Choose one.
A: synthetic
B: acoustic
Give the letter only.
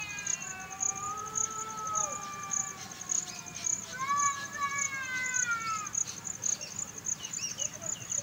B